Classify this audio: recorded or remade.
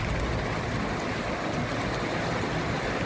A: recorded